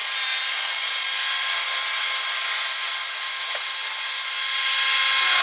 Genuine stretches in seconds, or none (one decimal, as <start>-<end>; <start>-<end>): 0.0-5.4